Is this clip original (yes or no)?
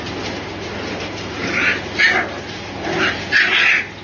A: yes